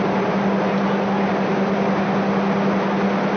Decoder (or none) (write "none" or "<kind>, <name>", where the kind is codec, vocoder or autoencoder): none